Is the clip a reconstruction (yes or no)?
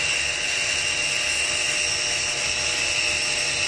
no